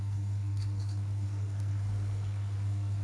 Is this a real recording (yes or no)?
no